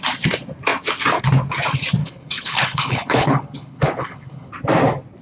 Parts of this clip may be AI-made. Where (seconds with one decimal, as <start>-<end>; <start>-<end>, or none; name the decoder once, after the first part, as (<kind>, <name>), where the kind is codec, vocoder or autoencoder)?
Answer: 2.0-4.5 (codec, HILCodec)